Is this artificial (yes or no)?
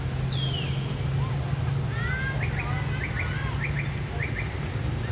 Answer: no